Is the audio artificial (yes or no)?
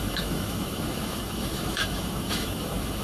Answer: yes